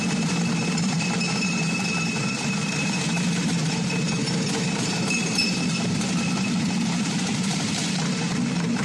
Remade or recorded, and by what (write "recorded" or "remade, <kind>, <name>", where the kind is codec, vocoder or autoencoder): remade, vocoder, BigVGAN v2